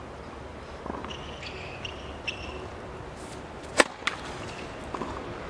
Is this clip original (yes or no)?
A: yes